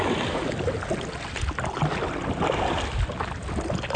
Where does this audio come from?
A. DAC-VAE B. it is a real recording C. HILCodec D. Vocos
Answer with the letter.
B